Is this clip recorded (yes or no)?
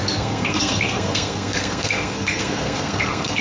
no